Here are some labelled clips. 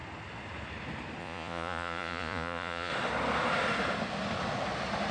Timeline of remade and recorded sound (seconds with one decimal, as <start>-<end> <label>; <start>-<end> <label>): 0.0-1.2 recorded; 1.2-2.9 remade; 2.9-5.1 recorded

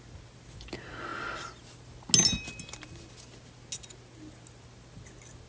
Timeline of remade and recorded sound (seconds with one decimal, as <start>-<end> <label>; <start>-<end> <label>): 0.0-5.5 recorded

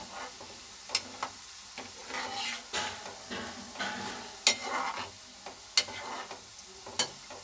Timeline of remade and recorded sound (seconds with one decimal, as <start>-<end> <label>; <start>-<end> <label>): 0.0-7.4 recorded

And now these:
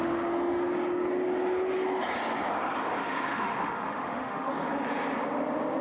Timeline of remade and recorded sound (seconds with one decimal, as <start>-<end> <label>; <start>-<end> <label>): 0.0-3.0 recorded; 3.0-4.5 remade; 4.5-5.8 recorded

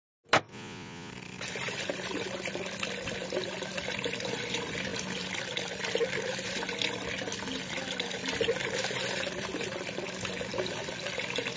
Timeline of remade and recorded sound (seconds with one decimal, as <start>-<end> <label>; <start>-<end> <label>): 0.0-0.5 recorded; 0.5-1.1 remade; 1.1-11.6 recorded